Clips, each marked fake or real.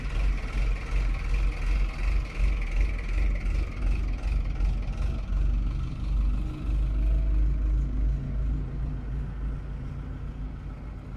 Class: real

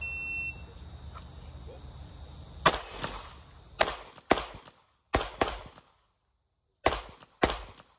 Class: real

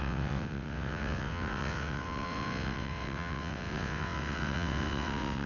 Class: fake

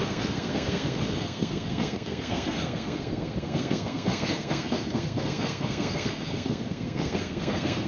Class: fake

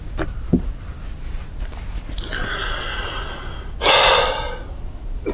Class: real